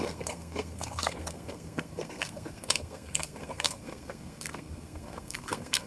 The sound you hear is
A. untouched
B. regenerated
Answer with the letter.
B